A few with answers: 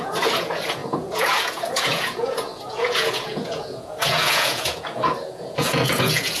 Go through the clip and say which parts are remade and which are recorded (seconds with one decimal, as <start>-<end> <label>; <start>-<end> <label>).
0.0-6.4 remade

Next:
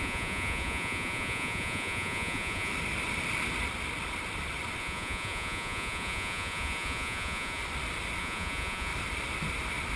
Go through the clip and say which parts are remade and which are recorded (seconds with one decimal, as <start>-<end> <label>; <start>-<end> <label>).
0.0-2.7 remade; 2.7-4.8 recorded; 4.8-7.6 remade; 7.6-8.2 recorded; 8.2-8.9 remade; 8.9-10.0 recorded

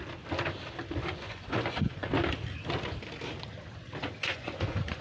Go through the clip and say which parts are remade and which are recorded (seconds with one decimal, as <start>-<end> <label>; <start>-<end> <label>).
0.0-1.0 recorded; 1.0-2.1 remade; 2.1-4.2 recorded; 4.2-5.0 remade

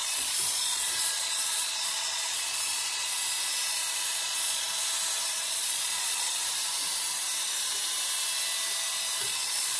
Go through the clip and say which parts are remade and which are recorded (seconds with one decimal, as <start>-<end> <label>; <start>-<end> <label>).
0.0-3.1 remade; 3.1-4.2 recorded; 4.2-4.8 remade; 4.8-5.3 recorded; 5.3-6.3 remade; 6.3-9.2 recorded; 9.2-9.8 remade

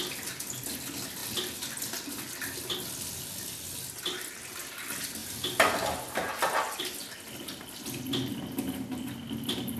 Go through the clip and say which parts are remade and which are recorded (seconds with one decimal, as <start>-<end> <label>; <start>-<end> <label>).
0.0-9.8 recorded

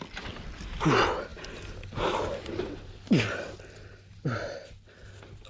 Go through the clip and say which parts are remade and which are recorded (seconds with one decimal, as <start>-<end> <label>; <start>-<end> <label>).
0.0-5.5 recorded

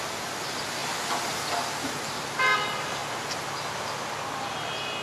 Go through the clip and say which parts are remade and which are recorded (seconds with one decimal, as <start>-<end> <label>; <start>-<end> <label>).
0.0-5.0 recorded

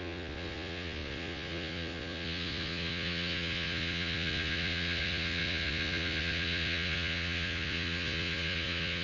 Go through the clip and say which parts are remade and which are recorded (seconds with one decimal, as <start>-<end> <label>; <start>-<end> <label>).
0.0-9.0 remade